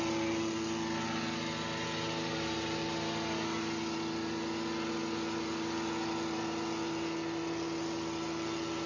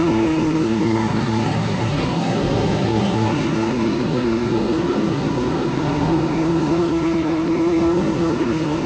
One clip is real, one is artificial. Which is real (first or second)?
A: first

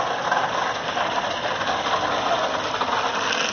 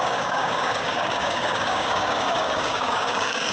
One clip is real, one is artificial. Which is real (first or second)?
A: first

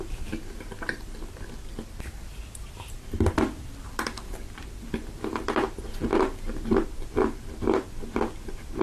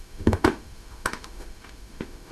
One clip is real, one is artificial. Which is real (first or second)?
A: first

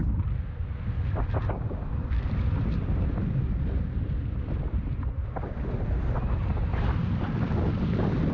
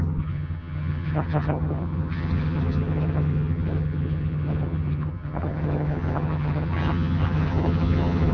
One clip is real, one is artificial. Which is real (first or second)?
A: first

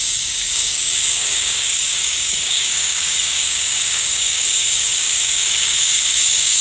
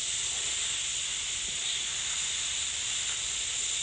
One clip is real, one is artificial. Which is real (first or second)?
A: second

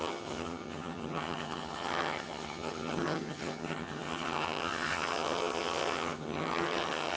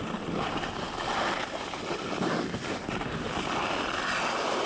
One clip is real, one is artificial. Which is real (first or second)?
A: second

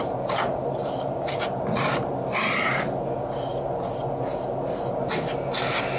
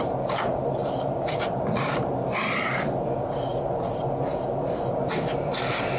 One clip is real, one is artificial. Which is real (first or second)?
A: first